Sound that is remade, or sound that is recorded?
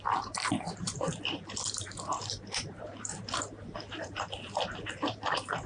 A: remade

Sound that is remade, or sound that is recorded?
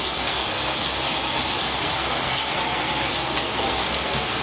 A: remade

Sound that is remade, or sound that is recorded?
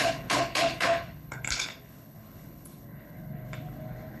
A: remade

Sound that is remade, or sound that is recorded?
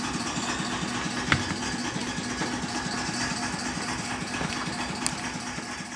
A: recorded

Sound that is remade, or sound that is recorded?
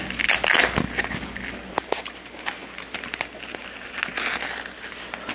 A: recorded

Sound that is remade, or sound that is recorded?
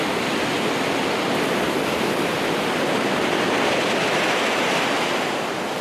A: recorded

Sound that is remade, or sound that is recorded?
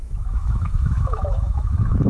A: remade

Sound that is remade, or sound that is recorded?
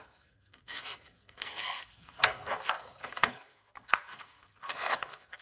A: remade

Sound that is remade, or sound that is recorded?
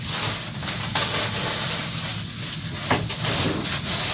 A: recorded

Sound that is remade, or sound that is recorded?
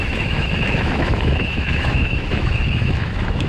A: remade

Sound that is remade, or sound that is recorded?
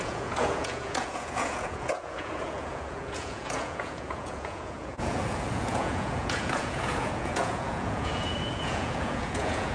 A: remade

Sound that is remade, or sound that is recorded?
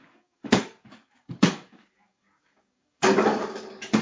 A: remade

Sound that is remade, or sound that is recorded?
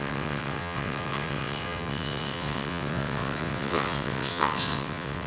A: remade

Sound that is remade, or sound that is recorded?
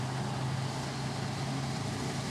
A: recorded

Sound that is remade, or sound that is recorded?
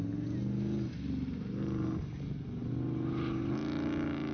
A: recorded